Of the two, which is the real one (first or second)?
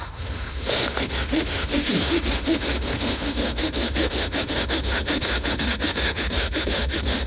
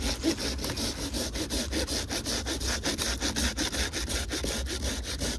second